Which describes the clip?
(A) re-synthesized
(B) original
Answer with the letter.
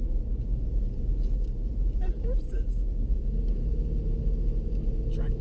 B